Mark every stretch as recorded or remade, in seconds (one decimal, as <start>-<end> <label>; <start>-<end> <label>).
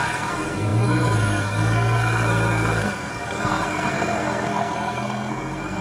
0.0-5.8 remade